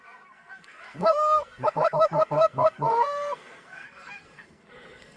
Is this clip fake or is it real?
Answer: fake